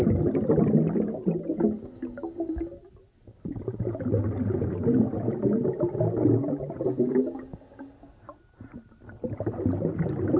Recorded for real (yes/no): yes